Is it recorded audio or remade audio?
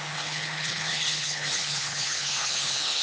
remade